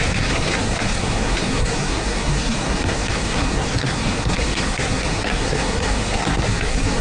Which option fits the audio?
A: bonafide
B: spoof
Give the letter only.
B